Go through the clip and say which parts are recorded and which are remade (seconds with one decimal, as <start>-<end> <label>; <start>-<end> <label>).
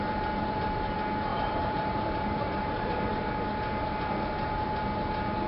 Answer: 0.0-1.3 recorded; 1.3-3.3 remade; 3.3-5.5 recorded